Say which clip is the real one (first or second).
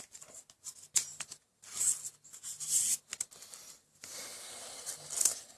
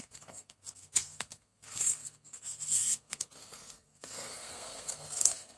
first